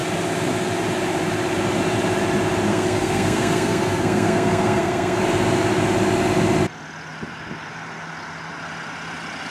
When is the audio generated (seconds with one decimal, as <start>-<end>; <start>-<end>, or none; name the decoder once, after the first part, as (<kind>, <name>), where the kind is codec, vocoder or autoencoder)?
2.7-5.2 (codec, SNAC)

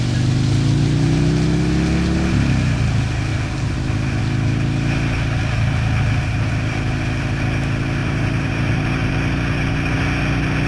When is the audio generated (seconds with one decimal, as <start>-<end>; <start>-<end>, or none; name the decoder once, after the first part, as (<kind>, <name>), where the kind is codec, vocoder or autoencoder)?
8.0-9.1 (vocoder, BigVGAN v2)

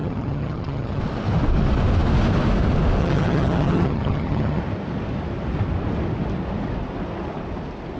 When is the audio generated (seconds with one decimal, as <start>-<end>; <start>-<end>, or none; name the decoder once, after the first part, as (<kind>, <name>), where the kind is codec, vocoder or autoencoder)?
0.0-1.0 (vocoder, HiFi-GAN); 3.0-4.6

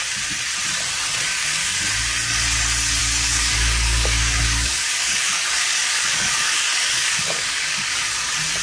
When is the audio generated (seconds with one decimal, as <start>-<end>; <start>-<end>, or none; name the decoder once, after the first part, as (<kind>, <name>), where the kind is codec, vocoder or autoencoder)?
1.3-1.8 (codec, DAC); 3.0-8.0

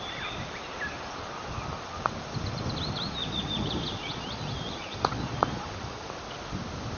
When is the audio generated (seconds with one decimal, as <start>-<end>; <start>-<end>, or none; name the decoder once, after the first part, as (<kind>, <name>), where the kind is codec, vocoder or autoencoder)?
3.2-6.1 (vocoder, Vocos)

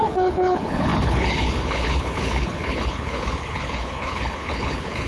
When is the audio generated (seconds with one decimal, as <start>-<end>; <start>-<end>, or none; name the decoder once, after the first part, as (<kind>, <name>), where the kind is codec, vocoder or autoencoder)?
0.0-5.1 (codec, HILCodec)

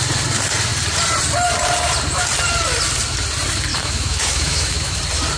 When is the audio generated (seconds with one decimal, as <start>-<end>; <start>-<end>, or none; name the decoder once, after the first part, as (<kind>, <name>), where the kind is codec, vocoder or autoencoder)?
3.7-5.0 (autoencoder, DAC-VAE)